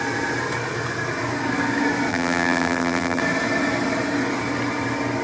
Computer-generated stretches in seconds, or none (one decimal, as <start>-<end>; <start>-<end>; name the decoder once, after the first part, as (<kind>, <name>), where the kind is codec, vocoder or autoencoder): 2.1-3.2 (vocoder, BigVGAN v2)